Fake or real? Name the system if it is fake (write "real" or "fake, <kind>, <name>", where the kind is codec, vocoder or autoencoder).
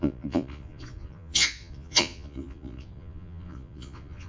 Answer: fake, vocoder, Vocos